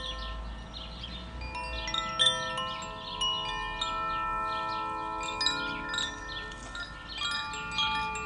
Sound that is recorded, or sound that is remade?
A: recorded